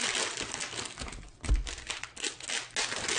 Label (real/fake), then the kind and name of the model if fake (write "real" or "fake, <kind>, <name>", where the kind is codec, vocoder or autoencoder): real